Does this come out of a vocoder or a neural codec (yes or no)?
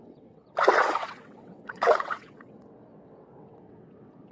yes